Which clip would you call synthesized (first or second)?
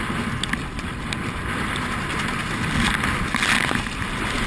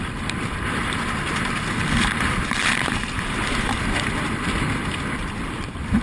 second